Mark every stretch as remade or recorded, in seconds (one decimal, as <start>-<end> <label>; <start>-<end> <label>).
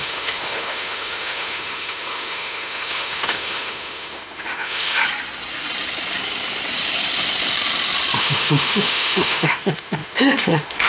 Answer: 0.0-5.0 remade; 5.0-8.2 recorded; 8.2-10.9 remade